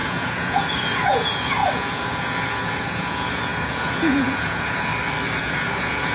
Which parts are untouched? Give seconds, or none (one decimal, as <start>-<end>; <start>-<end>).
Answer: 4.9-5.4